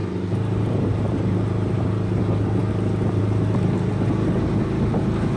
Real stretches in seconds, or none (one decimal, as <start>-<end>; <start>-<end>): 2.2-5.4